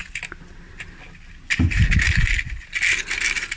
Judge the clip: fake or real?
real